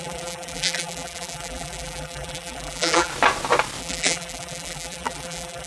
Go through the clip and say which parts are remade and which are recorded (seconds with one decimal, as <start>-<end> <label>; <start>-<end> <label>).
0.0-3.1 remade; 3.1-3.8 recorded; 3.8-5.7 remade